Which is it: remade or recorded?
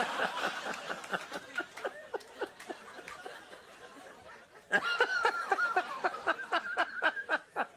remade